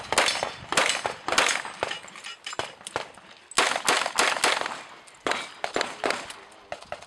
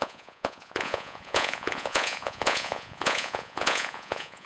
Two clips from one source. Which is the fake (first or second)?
second